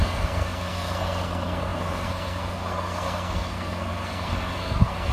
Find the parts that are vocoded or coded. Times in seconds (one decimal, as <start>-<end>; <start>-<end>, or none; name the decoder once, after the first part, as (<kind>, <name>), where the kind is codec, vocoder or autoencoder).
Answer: 0.0-5.1 (codec, SNAC)